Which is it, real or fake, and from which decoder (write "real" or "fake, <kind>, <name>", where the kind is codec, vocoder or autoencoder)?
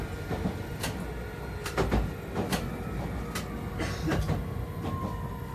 real